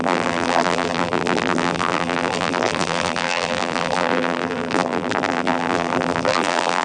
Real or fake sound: fake